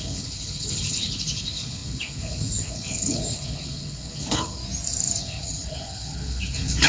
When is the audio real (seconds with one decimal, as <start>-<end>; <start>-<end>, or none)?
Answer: 4.6-5.2